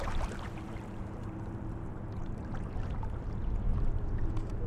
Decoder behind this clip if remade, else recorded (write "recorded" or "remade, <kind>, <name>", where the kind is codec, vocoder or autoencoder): remade, vocoder, BigVGAN v2